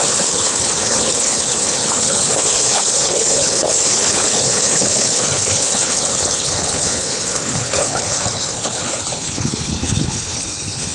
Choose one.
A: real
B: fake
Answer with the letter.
B